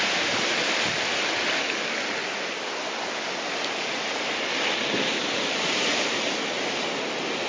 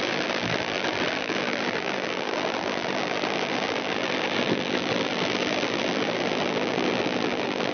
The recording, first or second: first